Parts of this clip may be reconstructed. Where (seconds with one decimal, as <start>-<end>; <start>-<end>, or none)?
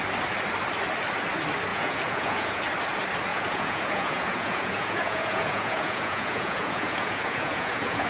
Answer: 1.7-2.6; 3.3-8.1